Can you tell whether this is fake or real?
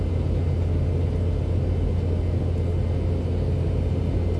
real